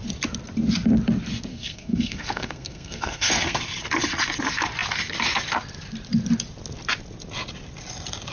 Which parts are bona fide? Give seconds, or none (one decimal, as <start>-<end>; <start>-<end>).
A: 0.0-1.5; 3.6-8.3

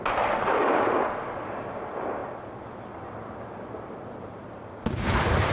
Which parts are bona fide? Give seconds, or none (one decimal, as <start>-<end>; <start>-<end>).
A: 0.0-5.5